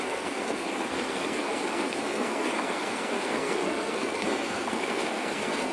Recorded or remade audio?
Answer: remade